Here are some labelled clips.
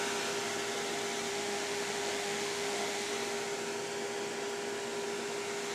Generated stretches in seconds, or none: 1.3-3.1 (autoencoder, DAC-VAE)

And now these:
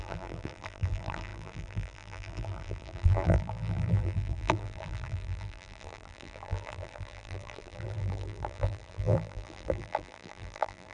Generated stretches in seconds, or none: 0.0-10.9 (vocoder, BigVGAN v2)

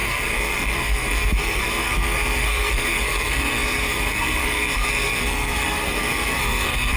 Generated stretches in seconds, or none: 0.0-7.0 (codec, SNAC)

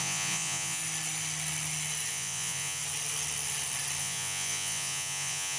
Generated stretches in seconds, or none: 0.0-0.8 (vocoder, Vocos); 2.1-2.8; 4.0-5.6